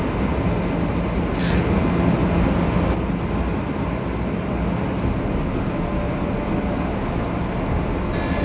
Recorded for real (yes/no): yes